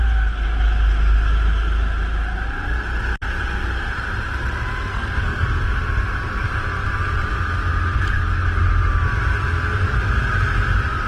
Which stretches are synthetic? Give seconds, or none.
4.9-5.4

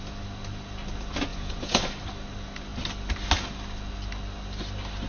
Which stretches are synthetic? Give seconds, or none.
1.3-1.8

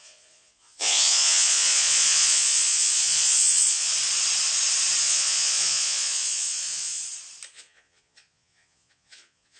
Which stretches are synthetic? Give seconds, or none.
0.0-3.9; 5.0-7.0; 7.5-9.6

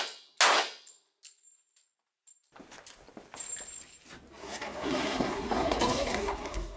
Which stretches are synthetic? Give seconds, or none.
4.4-6.8

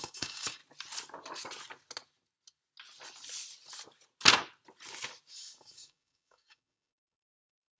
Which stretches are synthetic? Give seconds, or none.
0.0-0.6; 5.3-7.8

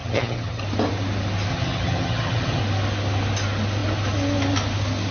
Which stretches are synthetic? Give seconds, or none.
0.0-0.6; 1.5-2.6

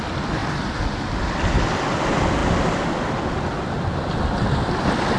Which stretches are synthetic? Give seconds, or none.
none